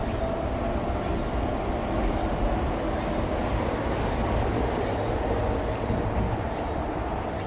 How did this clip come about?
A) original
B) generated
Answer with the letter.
A